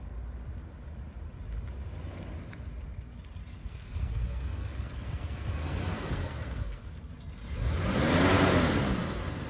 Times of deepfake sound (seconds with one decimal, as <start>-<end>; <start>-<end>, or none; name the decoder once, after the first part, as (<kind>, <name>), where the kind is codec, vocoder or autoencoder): 3.6-7.0 (codec, SNAC)